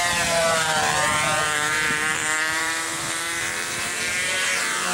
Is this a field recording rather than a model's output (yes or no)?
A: no